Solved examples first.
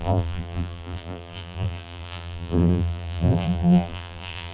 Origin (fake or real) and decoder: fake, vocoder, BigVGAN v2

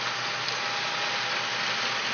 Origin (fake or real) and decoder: real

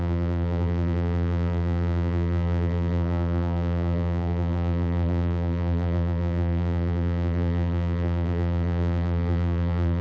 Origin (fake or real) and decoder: fake, vocoder, BigVGAN v2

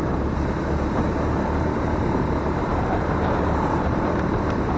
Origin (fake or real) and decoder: fake, vocoder, BigVGAN v2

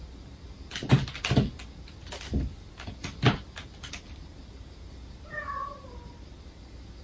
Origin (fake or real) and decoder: real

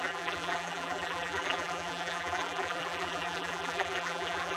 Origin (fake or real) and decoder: fake, vocoder, BigVGAN v2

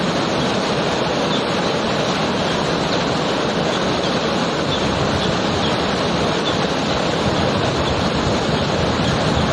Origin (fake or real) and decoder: fake, vocoder, BigVGAN v2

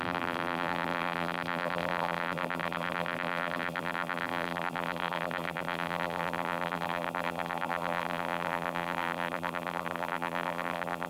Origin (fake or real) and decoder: fake, vocoder, BigVGAN v2